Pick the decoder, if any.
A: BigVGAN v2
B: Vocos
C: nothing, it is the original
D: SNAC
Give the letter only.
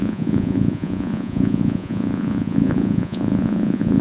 B